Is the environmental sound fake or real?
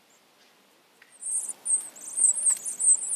real